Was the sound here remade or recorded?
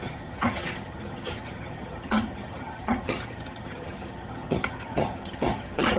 remade